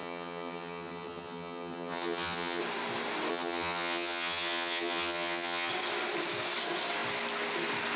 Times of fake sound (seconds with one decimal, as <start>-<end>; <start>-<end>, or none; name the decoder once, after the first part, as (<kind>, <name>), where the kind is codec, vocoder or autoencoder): 0.0-2.6 (vocoder, HiFi-GAN); 3.3-5.7